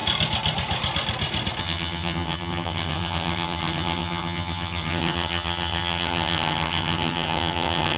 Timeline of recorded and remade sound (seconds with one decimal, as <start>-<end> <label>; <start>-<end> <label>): 0.0-1.6 recorded; 1.6-8.0 remade